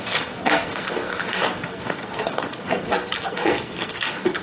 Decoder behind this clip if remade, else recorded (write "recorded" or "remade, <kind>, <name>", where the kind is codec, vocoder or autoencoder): remade, codec, SNAC